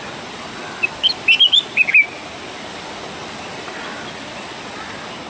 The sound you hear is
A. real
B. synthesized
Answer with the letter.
A